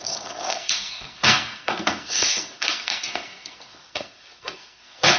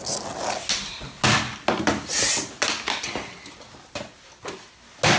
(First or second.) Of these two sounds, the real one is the second